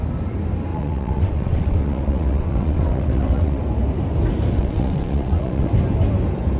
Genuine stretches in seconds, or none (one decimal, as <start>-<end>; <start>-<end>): 0.0-0.7; 3.6-4.5; 5.7-6.6